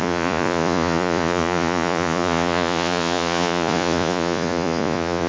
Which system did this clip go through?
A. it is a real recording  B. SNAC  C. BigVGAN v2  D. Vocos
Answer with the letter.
D